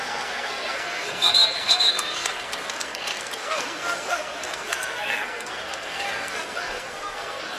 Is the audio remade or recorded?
remade